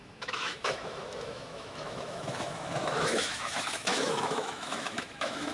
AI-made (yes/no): yes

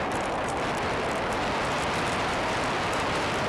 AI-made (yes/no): no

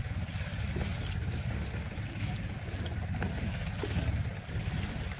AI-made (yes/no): no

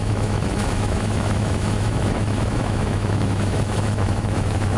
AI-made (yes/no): yes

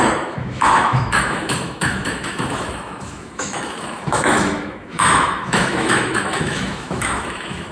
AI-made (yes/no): yes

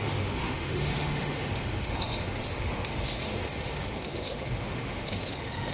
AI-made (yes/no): yes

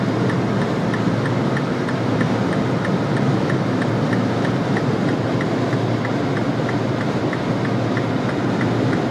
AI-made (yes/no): no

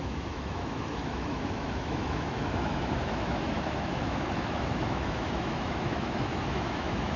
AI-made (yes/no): yes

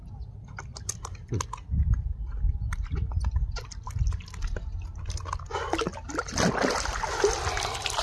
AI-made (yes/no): no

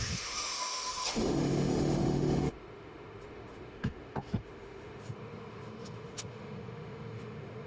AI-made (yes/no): yes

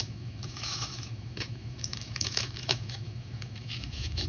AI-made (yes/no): yes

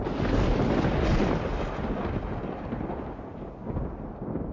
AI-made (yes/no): no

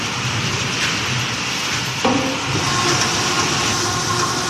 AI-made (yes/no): no